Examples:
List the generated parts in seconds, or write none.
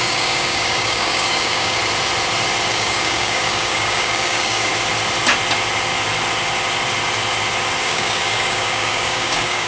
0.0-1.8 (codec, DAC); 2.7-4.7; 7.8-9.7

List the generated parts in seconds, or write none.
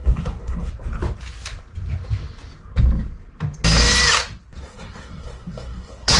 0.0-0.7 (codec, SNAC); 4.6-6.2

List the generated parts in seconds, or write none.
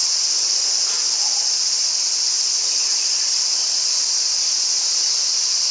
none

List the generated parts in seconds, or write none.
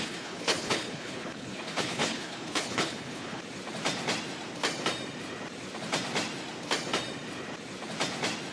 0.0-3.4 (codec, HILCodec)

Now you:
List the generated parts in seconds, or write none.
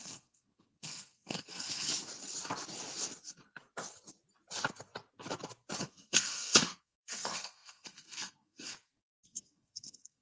0.0-1.9 (codec, SNAC); 5.8-10.2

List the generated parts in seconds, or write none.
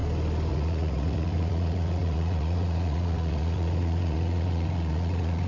0.5-5.5 (vocoder, Vocos)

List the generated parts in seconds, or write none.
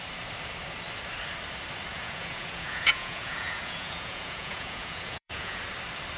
1.9-5.6 (vocoder, Vocos)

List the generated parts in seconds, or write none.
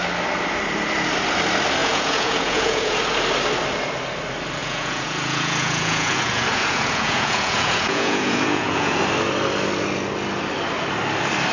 1.8-3.0 (vocoder, Vocos); 4.6-9.0